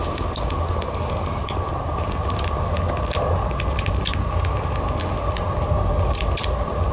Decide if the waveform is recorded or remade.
recorded